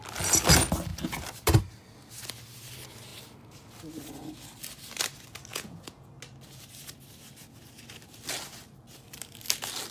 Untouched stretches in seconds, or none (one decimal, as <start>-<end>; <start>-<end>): 0.0-5.5; 6.1-9.9